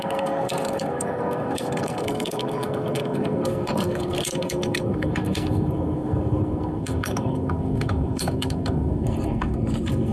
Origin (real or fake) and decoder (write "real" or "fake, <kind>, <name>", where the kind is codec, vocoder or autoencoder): fake, codec, SNAC